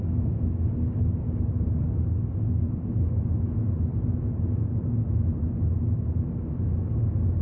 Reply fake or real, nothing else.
real